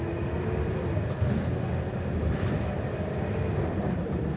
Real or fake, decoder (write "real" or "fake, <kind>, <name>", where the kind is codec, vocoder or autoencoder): real